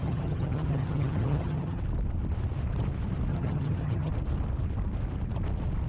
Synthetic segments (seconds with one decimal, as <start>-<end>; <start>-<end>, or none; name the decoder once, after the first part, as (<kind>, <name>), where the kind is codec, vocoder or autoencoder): 0.0-1.8 (vocoder, HiFi-GAN); 3.3-4.1